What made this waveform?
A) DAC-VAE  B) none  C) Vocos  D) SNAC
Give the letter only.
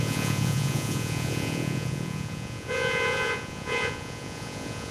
C